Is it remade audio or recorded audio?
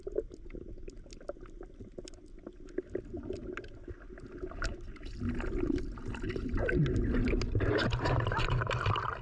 recorded